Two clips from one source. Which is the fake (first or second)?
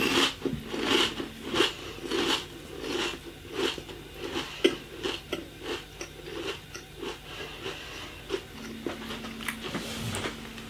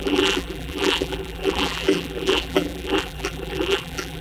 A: second